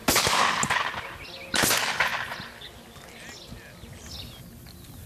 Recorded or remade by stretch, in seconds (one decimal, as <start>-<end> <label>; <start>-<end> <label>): 0.0-5.1 recorded